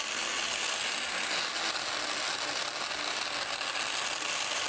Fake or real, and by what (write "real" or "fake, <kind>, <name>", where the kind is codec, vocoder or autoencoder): real